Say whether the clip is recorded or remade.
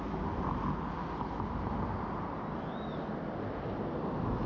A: recorded